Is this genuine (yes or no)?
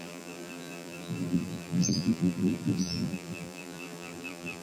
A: no